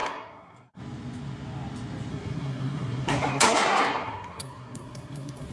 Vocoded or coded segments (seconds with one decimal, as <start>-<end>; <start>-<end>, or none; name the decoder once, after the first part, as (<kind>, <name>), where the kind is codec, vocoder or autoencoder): 0.0-0.8 (codec, SNAC); 2.1-5.5